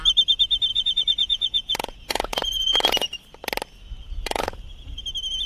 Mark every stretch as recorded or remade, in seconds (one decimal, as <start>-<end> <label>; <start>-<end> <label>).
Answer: 0.0-0.7 recorded; 0.7-3.2 remade; 3.2-4.0 recorded; 4.0-5.0 remade; 5.0-5.5 recorded